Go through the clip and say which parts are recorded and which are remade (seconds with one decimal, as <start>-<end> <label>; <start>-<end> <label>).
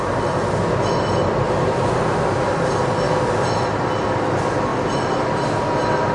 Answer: 0.0-6.1 recorded